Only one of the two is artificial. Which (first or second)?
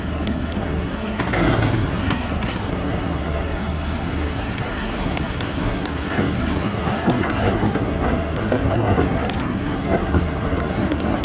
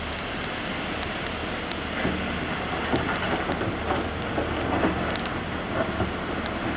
first